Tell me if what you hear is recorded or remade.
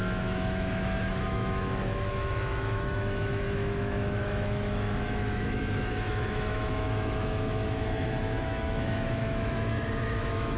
remade